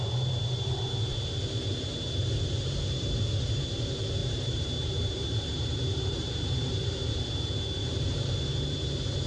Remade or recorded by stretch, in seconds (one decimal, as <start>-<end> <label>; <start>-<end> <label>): 0.0-4.2 recorded; 4.2-7.3 remade; 7.3-7.8 recorded; 7.8-8.3 remade; 8.3-9.3 recorded